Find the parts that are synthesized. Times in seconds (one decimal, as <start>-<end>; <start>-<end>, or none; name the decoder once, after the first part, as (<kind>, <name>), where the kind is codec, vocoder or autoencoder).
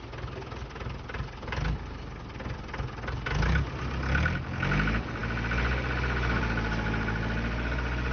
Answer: none